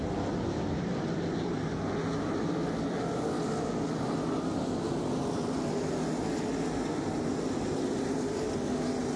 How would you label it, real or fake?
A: real